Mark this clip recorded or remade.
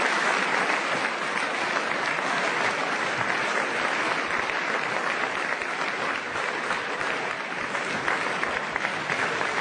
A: recorded